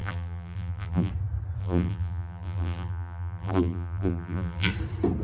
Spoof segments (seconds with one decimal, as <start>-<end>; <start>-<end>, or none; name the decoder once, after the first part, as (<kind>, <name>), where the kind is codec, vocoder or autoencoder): 0.0-1.1 (vocoder, BigVGAN v2); 1.6-4.7